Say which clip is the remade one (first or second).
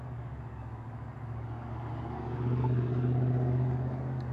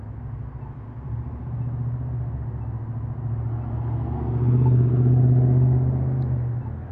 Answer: first